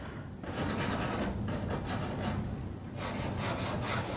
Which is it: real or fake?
real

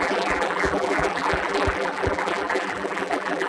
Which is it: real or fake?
fake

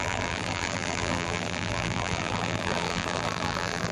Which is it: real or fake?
fake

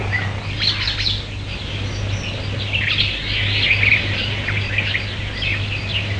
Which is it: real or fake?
real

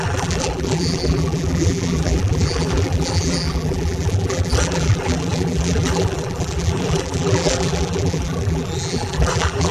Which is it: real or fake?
fake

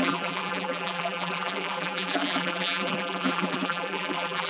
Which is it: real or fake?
fake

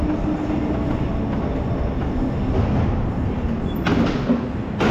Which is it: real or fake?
real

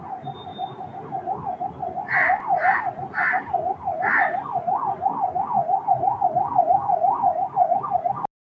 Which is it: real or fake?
real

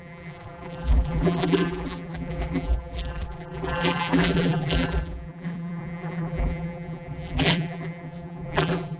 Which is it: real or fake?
fake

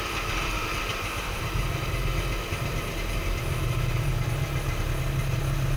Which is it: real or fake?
real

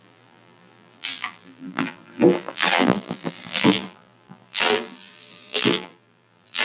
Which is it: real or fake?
fake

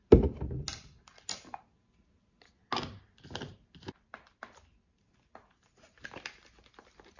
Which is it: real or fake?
real